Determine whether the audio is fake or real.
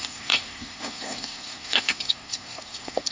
fake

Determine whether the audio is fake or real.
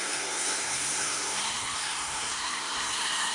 fake